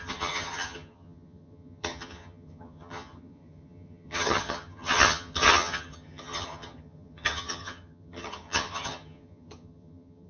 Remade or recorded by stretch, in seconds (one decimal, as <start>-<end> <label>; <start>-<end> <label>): 0.0-10.3 remade